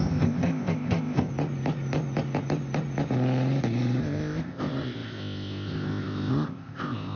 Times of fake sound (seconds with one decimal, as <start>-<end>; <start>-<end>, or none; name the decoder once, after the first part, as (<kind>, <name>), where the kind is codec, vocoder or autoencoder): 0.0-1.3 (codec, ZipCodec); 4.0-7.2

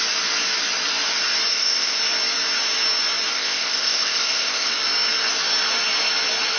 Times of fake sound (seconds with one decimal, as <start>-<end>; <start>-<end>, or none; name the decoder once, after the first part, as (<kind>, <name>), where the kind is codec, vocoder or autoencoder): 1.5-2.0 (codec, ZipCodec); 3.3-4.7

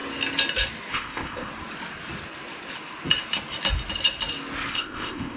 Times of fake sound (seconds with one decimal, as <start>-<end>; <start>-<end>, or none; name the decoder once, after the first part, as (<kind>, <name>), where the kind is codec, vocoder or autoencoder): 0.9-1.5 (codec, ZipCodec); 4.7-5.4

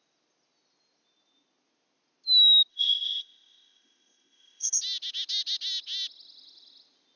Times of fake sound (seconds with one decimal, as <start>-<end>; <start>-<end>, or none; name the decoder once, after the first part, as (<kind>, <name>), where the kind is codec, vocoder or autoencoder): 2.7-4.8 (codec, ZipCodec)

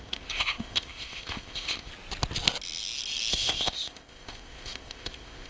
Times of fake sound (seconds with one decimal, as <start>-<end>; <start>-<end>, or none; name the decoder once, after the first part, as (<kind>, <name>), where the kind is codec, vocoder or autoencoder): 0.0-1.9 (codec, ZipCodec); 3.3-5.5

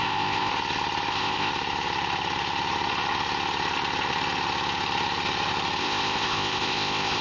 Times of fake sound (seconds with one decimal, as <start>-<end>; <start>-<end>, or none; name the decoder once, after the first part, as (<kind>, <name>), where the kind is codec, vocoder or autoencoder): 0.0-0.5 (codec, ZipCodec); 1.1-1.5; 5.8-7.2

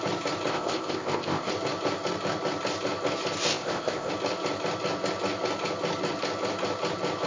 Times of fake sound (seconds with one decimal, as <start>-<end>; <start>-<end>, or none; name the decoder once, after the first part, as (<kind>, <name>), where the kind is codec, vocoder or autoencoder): 0.5-1.5 (codec, ZipCodec); 3.5-4.1